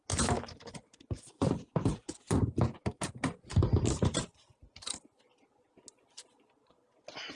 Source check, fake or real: real